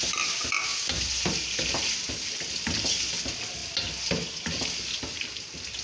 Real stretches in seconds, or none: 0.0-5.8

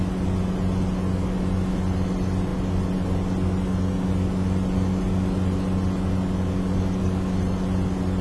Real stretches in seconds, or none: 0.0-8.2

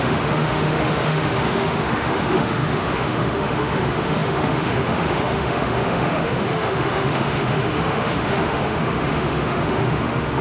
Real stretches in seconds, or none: none

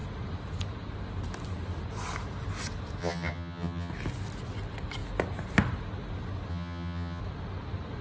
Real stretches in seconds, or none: 0.0-3.0; 3.9-6.5; 7.2-8.0

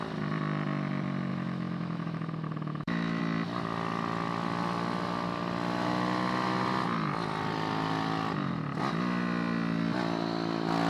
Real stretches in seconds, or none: 0.0-1.3; 3.2-10.9

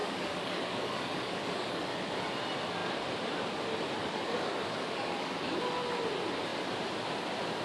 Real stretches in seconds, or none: 2.0-4.0; 5.6-7.6

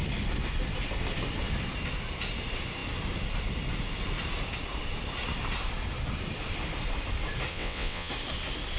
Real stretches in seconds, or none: 0.0-7.5; 8.1-8.8

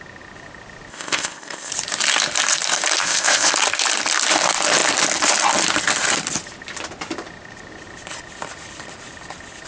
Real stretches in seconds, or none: 0.0-0.9; 1.7-3.0; 3.5-9.7